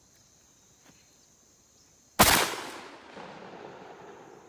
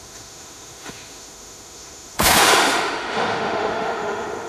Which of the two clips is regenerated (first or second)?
second